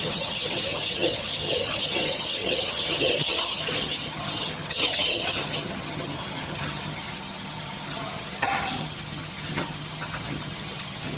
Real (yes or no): no